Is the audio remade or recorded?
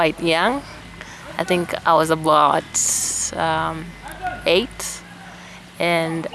recorded